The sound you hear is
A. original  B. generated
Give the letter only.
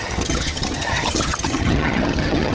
B